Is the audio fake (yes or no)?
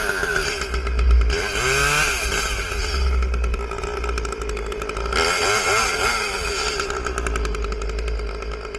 no